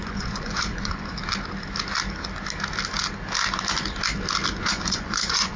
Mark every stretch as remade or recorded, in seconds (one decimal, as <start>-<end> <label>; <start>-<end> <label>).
0.0-1.2 remade; 1.2-4.6 recorded; 4.6-5.6 remade